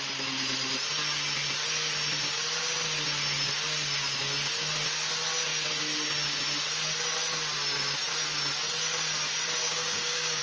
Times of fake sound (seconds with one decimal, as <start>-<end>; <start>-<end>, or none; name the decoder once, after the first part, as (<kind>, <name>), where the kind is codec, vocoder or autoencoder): 9.6-10.4 (codec, DAC)